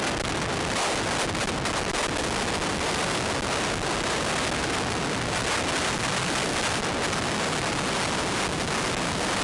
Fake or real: real